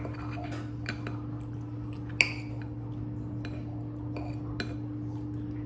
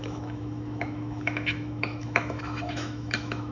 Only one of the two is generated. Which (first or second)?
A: second